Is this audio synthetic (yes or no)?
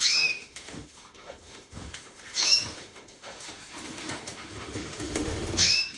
yes